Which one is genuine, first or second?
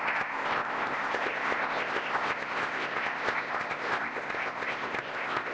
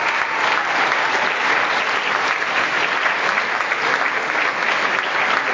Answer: second